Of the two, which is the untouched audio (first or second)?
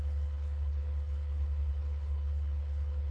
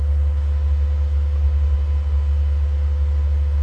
second